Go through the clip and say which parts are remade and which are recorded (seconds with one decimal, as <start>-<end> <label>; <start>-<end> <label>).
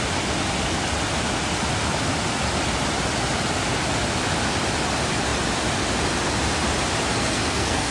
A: 0.0-7.1 recorded; 7.1-7.9 remade